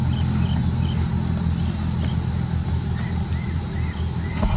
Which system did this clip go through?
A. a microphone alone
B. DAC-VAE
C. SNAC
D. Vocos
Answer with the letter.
A